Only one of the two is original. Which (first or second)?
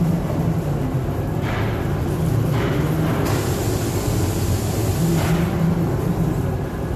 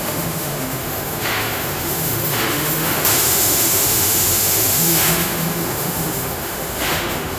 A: first